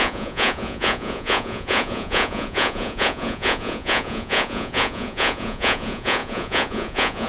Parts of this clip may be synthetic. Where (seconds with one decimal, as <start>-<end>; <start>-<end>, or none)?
0.0-7.3